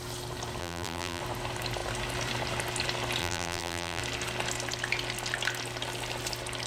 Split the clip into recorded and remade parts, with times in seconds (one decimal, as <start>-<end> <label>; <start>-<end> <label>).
0.0-0.6 recorded; 0.6-1.2 remade; 1.2-3.2 recorded; 3.2-4.0 remade; 4.0-6.7 recorded